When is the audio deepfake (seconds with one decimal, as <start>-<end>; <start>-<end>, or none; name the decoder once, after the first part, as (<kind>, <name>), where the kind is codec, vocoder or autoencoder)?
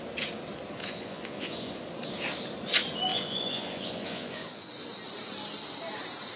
0.8-1.8 (vocoder, Vocos); 3.1-4.7